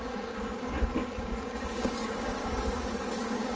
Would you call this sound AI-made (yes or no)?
yes